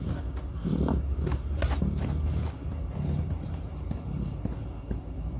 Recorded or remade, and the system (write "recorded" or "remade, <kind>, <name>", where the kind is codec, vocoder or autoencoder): recorded